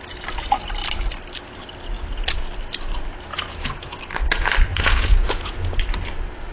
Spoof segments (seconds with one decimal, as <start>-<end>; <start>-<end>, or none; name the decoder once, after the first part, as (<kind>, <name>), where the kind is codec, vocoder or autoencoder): 3.3-4.0 (vocoder, Vocos); 4.7-5.8